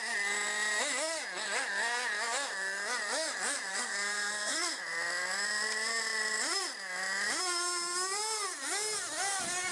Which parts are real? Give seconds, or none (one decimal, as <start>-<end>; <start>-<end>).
0.0-3.7; 4.8-9.7